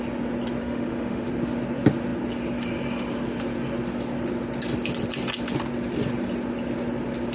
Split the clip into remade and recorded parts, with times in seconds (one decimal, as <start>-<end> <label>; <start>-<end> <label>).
0.0-0.6 recorded; 0.6-1.3 remade; 1.3-7.3 recorded